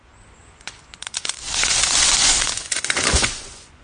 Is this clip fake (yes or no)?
yes